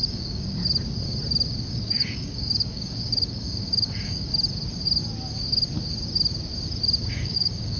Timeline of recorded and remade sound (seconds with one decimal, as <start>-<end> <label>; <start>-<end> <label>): 0.0-0.6 remade; 0.6-1.7 recorded; 1.7-4.3 remade; 4.3-7.1 recorded; 7.1-7.8 remade